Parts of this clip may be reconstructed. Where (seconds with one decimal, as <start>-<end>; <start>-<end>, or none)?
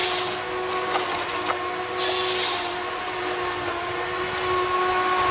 none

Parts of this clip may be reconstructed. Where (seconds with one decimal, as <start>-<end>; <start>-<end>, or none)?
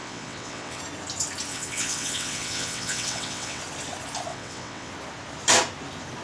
0.0-0.8; 1.5-3.6; 4.3-4.9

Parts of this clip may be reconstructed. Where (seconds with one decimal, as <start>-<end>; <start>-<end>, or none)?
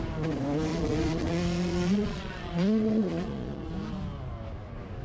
0.7-3.7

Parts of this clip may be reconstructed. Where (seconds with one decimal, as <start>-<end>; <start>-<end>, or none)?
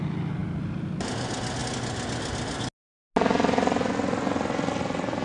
none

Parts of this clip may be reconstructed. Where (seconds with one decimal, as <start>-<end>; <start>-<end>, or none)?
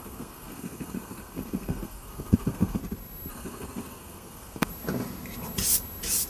0.0-2.8; 3.3-4.7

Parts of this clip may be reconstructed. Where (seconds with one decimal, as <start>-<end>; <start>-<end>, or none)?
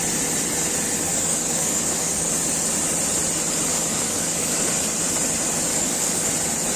1.1-2.4; 3.7-4.7; 5.7-6.3